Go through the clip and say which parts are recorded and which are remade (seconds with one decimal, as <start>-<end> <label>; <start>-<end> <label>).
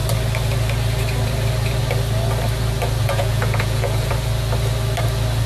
0.0-3.0 recorded; 3.0-4.1 remade; 4.1-5.5 recorded